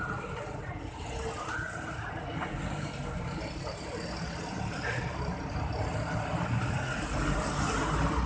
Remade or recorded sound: recorded